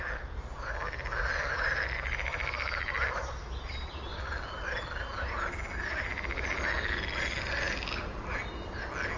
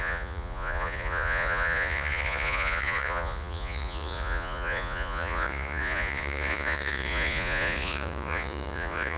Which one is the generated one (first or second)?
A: second